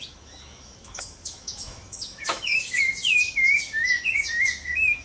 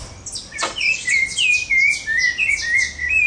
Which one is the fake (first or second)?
first